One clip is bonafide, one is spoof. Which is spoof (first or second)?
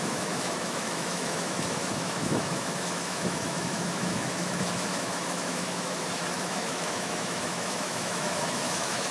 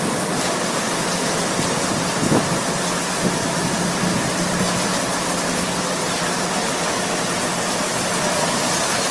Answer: first